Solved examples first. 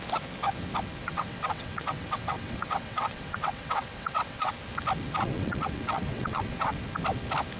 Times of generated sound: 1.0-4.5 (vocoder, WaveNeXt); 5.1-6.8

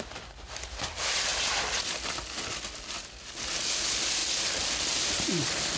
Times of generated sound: none

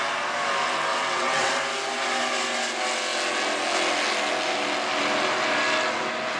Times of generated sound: 0.9-1.5 (vocoder, WaveNeXt)

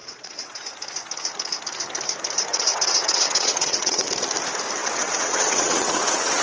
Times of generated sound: 0.0-0.6 (vocoder, WaveNeXt); 2.5-4.1; 4.8-6.4

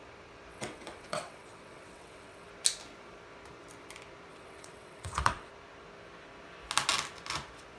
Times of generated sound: 0.5-2.5 (vocoder, WaveNeXt); 4.3-5.5

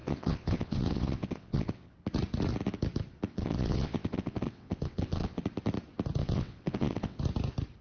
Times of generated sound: 0.0-1.9 (vocoder, WaveNeXt); 3.3-5.4; 6.2-7.2

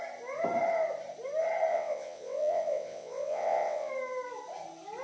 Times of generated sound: 1.7-3.9 (vocoder, WaveNeXt)

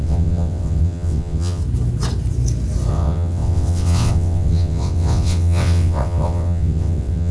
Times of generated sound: 0.0-1.6 (vocoder, WaveNeXt); 2.9-7.3